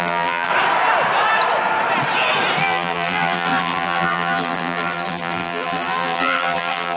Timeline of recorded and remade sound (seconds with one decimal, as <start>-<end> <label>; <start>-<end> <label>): 0.0-0.5 remade; 0.5-2.6 recorded; 2.6-7.0 remade